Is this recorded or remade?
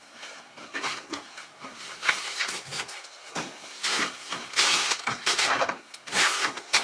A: remade